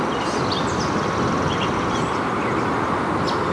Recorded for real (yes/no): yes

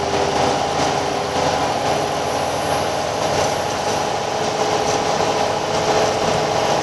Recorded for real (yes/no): yes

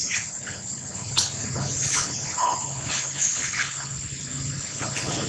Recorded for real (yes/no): no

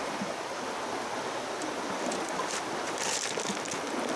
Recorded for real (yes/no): yes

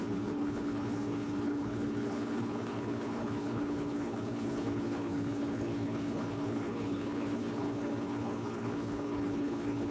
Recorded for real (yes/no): no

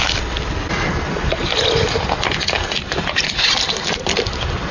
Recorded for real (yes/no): yes